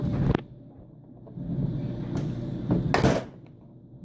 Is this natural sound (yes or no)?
yes